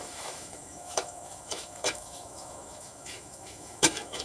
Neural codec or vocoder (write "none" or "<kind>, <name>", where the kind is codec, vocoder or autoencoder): autoencoder, DAC-VAE